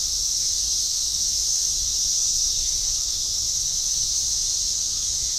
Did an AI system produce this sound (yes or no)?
yes